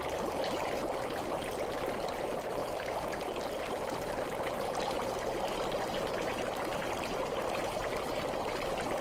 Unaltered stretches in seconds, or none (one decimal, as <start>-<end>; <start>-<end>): 0.0-2.6; 3.4-9.0